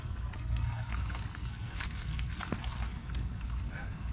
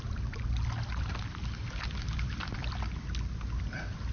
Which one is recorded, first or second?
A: second